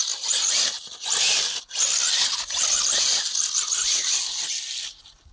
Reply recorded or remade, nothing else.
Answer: recorded